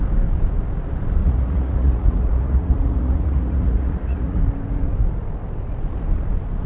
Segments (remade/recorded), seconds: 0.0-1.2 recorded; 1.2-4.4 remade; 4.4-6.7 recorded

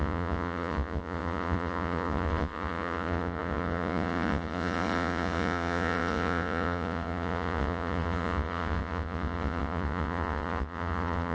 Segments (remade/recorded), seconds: 0.0-11.3 remade

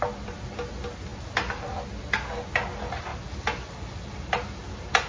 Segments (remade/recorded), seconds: 0.0-5.1 recorded

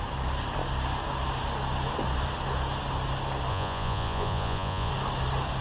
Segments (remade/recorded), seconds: 0.0-3.5 recorded; 3.5-4.9 remade; 4.9-5.6 recorded